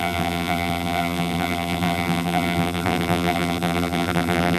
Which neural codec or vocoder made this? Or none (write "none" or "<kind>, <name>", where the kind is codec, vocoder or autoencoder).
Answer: vocoder, BigVGAN v2